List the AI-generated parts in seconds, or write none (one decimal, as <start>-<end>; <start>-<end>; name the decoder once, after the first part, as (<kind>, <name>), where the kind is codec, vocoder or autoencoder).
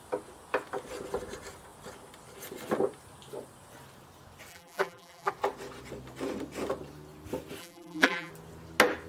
4.5-5.3 (vocoder, BigVGAN v2); 7.6-8.3